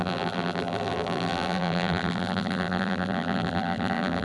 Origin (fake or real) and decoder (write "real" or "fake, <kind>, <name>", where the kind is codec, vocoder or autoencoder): fake, vocoder, BigVGAN v2